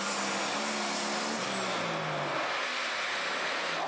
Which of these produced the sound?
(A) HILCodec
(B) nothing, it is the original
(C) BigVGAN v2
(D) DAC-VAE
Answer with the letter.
B